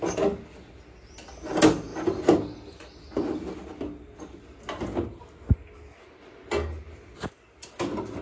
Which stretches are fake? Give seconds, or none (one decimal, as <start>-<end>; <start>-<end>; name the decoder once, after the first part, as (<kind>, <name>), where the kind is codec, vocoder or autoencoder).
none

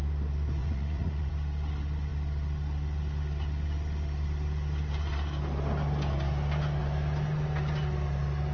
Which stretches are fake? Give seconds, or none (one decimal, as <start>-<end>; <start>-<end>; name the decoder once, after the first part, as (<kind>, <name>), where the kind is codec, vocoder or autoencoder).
0.6-1.3 (vocoder, Vocos)

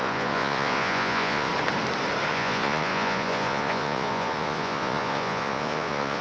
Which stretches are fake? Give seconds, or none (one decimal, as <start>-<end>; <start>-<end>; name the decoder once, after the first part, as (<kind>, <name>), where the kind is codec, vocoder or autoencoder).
0.0-1.5 (vocoder, Vocos); 2.3-6.2

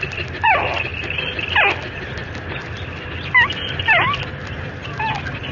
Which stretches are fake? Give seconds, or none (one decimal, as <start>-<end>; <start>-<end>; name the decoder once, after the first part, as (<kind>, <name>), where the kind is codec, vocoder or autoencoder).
none